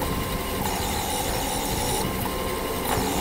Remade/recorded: recorded